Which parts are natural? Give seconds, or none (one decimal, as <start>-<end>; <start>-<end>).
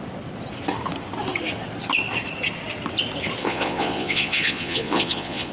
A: 0.0-3.4